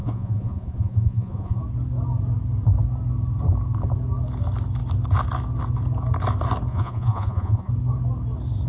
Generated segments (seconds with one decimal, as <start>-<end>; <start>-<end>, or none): 0.0-1.6; 6.7-7.7